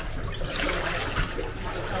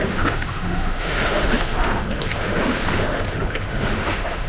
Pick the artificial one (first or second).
second